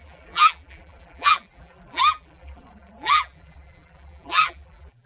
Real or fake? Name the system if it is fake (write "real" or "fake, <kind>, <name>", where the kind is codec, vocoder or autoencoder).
fake, vocoder, BigVGAN v2